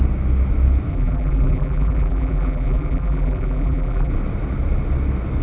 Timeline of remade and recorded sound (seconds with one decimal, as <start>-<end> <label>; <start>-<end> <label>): 0.0-0.9 recorded; 0.9-4.1 remade; 4.1-5.4 recorded